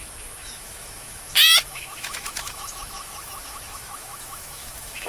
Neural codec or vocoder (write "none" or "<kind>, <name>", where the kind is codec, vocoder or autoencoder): autoencoder, DAC-VAE